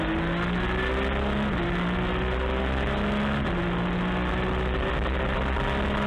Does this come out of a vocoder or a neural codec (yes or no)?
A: no